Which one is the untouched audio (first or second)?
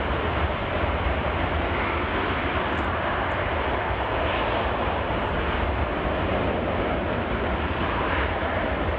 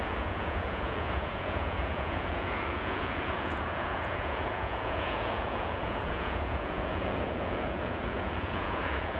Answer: first